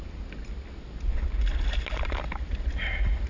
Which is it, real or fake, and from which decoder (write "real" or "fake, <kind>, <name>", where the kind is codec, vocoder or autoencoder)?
real